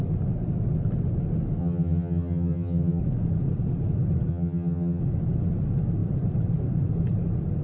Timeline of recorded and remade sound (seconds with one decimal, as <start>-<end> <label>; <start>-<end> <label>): 0.0-1.6 recorded; 1.6-3.0 remade; 3.0-4.3 recorded; 4.3-5.0 remade; 5.0-7.6 recorded